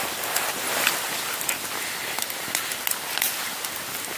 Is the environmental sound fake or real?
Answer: real